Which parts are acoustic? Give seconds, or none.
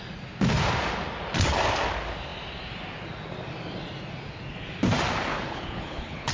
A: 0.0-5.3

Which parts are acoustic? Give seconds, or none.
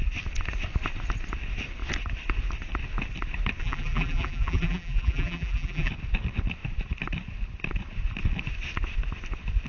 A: 0.0-3.6; 5.9-9.7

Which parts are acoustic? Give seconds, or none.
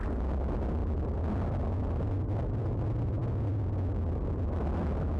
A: 0.0-5.2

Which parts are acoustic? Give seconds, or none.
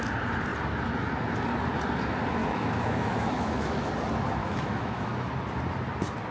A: 0.0-2.4; 3.9-4.4; 5.3-6.3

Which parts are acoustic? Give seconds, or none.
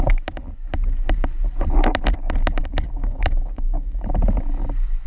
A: 0.0-2.6; 4.1-5.1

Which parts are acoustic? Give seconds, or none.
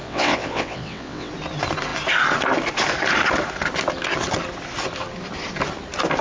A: 1.3-6.2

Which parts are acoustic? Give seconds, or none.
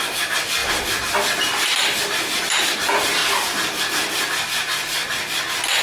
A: 0.6-2.4; 3.2-3.8; 5.0-5.8